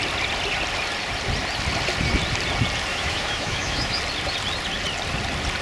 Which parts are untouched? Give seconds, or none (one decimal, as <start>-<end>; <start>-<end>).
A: 0.0-2.9; 4.0-5.6